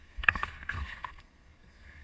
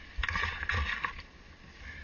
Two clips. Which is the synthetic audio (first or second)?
first